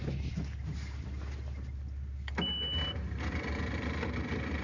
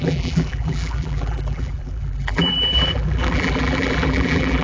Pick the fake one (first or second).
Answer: second